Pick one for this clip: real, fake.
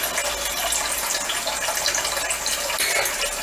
real